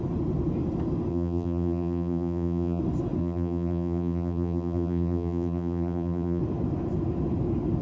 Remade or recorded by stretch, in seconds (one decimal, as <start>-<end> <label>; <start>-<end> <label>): 0.0-1.1 recorded; 1.1-2.8 remade; 2.8-3.2 recorded; 3.2-6.4 remade; 6.4-7.8 recorded